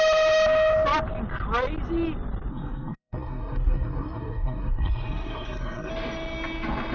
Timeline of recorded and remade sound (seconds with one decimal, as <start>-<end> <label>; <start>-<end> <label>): 0.0-2.5 recorded; 2.5-5.9 remade; 5.9-6.9 recorded